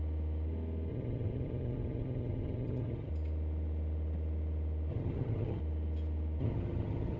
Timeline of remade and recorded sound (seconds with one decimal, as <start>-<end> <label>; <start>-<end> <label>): 0.0-0.9 recorded; 0.9-3.1 remade; 3.1-4.9 recorded; 4.9-5.6 remade; 5.6-6.4 recorded; 6.4-7.2 remade